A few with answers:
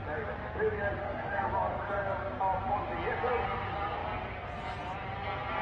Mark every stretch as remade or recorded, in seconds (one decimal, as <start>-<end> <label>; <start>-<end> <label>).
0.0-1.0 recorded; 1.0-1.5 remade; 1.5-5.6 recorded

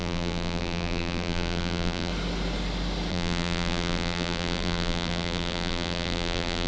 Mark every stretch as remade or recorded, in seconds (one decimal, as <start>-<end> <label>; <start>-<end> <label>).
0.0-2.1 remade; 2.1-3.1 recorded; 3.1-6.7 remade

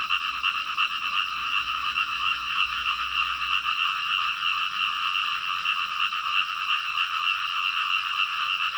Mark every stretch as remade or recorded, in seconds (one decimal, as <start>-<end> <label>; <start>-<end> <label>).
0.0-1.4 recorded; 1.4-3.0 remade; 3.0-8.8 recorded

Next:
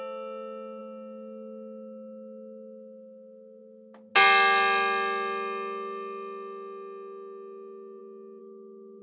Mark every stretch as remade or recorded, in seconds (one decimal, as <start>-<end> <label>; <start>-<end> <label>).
0.0-8.4 recorded; 8.4-9.0 remade

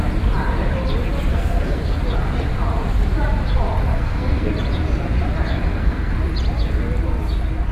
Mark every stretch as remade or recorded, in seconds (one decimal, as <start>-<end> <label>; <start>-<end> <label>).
0.0-1.3 recorded; 1.3-2.0 remade; 2.0-3.9 recorded; 3.9-4.5 remade; 4.5-5.5 recorded; 5.5-6.1 remade; 6.1-7.7 recorded

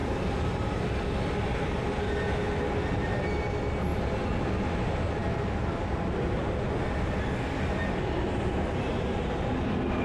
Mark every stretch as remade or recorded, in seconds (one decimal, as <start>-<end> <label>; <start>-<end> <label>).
0.0-10.0 recorded

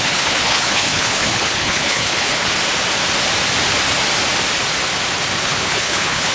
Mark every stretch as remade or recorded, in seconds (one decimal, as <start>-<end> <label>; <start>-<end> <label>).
0.0-2.5 remade; 2.5-5.4 recorded; 5.4-6.3 remade

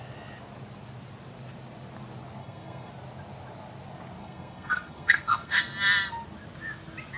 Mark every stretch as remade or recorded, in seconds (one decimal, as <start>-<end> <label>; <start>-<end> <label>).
0.0-2.4 recorded; 2.4-2.9 remade; 2.9-4.2 recorded; 4.2-5.6 remade; 5.6-7.2 recorded